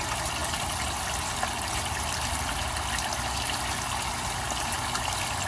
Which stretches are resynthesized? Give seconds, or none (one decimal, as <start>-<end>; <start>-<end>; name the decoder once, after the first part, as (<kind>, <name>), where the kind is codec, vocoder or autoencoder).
none